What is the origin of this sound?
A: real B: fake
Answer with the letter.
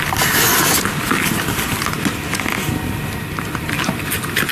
A